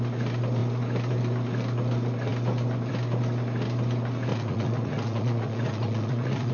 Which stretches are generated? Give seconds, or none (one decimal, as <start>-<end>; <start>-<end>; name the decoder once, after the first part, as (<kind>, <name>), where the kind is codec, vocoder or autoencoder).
4.3-6.5 (vocoder, Vocos)